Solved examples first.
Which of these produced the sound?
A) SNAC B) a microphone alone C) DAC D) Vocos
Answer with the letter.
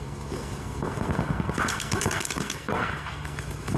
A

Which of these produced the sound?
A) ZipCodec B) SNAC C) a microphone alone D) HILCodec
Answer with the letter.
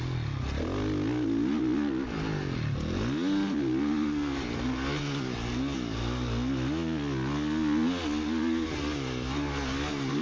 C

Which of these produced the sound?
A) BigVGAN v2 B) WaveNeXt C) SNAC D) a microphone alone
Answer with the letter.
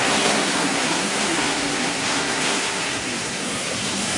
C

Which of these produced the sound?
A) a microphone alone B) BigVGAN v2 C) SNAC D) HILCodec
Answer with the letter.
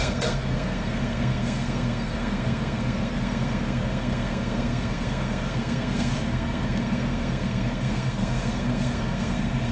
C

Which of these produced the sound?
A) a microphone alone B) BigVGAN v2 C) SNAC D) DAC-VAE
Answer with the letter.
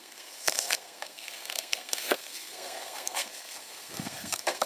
C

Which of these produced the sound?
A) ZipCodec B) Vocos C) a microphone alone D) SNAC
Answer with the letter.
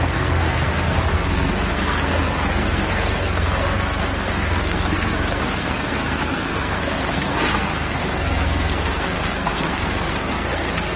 D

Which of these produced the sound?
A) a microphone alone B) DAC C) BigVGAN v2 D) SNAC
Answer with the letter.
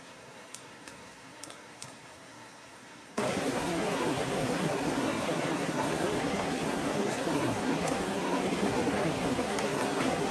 D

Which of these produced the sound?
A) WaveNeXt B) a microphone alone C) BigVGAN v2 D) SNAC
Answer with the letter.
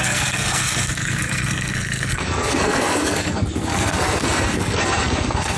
D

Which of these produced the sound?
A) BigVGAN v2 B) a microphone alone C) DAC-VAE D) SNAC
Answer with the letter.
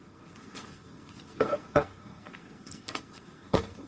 D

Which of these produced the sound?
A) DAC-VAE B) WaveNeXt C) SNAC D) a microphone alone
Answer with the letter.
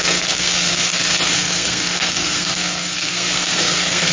C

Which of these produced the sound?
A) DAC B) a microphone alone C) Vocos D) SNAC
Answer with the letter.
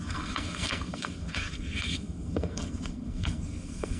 D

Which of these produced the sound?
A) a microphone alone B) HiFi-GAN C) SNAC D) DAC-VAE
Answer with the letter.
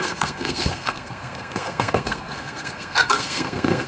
C